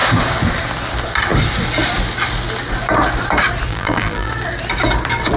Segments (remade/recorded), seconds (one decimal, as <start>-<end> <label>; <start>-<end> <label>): 0.0-3.7 recorded; 3.7-4.3 remade; 4.3-5.4 recorded